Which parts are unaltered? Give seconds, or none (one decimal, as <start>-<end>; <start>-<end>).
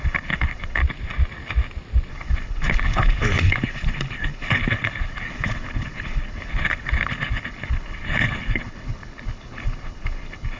0.8-2.1